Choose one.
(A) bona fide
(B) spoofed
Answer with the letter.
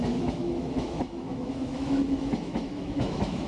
B